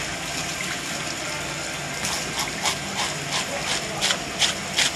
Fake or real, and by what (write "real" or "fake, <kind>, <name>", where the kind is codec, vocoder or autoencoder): real